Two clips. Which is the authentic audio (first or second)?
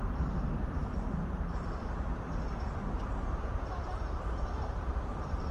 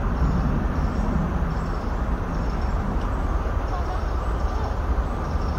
second